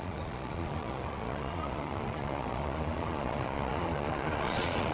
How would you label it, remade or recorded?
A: remade